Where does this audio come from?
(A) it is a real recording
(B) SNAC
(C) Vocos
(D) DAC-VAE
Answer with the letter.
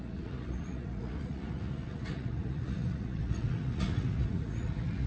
C